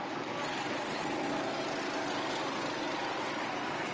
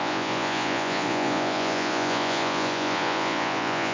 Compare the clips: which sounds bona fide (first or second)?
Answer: first